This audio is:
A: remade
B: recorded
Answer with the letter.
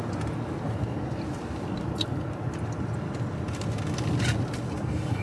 B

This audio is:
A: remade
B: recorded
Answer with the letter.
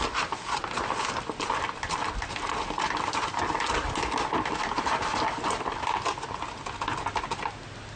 B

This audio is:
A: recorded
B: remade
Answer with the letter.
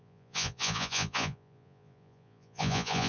B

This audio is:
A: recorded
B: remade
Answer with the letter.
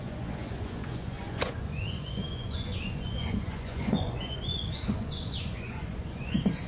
B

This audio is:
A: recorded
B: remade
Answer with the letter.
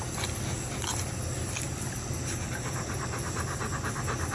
A